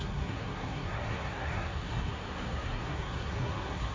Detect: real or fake fake